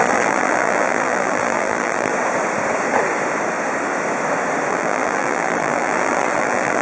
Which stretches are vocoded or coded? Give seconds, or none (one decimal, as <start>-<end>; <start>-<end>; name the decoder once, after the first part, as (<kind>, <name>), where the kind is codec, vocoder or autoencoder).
0.0-2.1 (vocoder, BigVGAN v2); 4.7-6.8